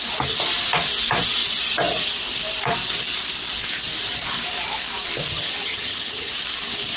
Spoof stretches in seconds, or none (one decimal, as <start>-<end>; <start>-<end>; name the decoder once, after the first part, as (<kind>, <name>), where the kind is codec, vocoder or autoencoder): 5.3-6.3 (vocoder, HiFi-GAN)